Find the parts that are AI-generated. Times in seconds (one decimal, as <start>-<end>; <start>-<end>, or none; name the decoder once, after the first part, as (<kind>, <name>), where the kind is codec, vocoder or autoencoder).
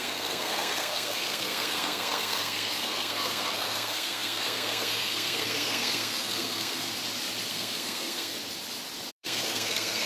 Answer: 0.0-6.9 (codec, SNAC); 7.5-8.3; 9.1-10.1